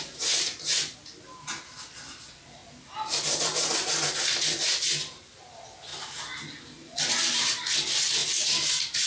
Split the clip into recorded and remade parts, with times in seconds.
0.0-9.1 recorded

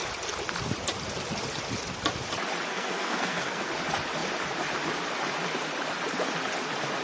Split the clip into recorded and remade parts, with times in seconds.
0.0-2.7 recorded; 2.7-3.7 remade; 3.7-7.0 recorded